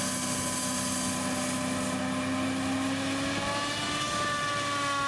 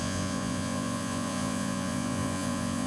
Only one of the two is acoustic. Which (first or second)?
first